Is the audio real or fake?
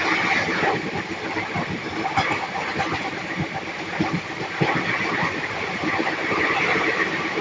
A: real